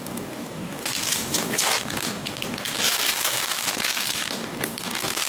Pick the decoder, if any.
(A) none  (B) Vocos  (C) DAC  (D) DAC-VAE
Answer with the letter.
C